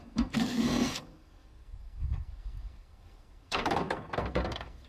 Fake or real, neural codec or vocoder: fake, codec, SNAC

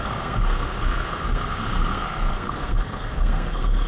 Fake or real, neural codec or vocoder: fake, codec, SNAC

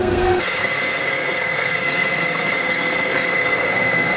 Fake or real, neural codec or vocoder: fake, codec, SNAC